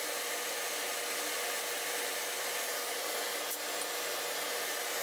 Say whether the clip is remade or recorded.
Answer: recorded